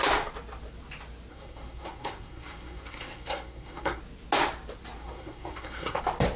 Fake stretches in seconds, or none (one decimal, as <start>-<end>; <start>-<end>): 1.3-4.0; 5.0-6.0